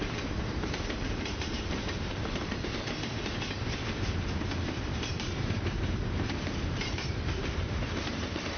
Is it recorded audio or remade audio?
remade